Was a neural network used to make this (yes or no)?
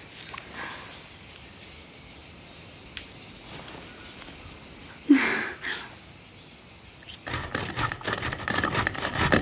no